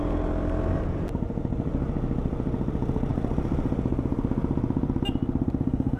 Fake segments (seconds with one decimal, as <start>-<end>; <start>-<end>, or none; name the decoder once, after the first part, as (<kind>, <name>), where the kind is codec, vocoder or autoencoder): 3.1-4.2 (vocoder, BigVGAN v2); 5.2-6.0